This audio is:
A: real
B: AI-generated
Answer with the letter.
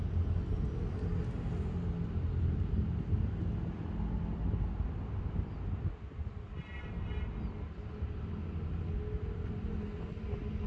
A